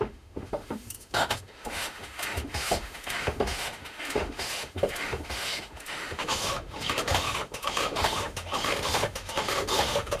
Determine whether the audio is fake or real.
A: fake